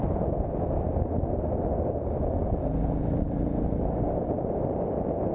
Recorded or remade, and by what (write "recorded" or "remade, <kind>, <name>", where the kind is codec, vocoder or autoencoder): recorded